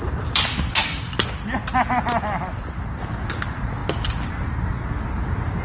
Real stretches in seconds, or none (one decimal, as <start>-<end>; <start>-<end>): 0.0-5.6